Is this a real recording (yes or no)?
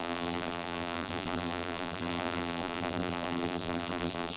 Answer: no